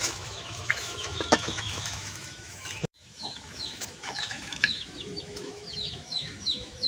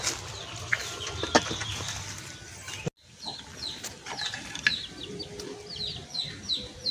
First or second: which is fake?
first